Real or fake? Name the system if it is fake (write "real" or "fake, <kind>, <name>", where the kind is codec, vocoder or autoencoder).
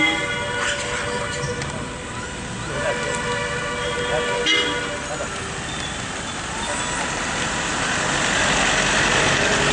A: real